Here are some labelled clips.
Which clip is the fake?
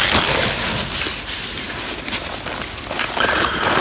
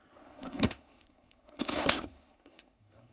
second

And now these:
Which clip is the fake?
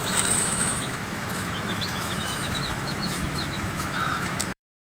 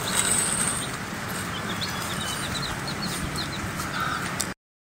first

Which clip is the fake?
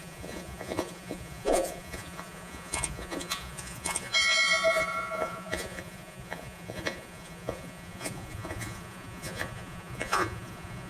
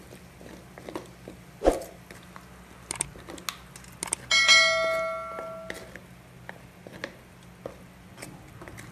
first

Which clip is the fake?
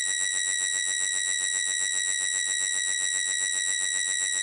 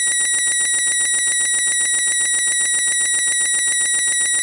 first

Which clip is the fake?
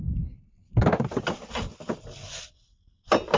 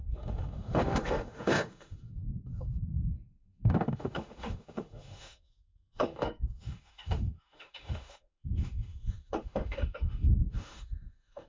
second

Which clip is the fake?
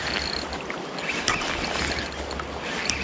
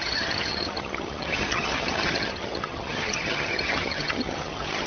second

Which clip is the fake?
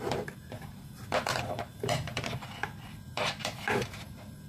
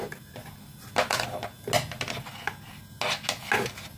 first